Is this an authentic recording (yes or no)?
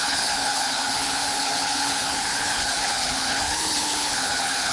no